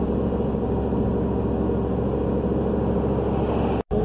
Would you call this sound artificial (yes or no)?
no